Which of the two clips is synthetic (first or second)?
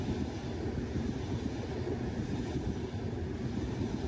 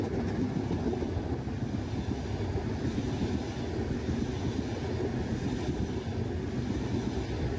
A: first